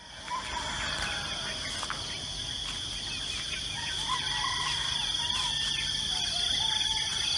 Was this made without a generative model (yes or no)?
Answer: yes